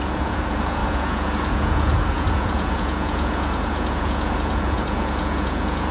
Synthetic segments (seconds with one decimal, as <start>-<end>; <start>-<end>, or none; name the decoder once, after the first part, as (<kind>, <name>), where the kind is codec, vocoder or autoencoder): 0.0-5.9 (vocoder, Vocos)